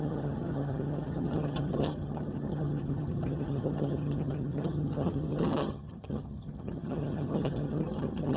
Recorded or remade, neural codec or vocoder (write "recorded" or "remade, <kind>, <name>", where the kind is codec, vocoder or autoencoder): remade, vocoder, HiFi-GAN